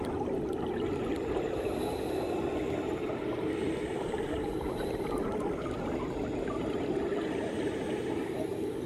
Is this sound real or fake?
real